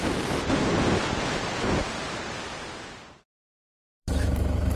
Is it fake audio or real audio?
fake